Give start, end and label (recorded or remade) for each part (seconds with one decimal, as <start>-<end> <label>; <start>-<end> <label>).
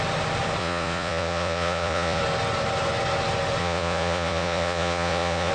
0.0-0.6 recorded; 0.6-2.2 remade; 2.2-3.6 recorded; 3.6-5.5 remade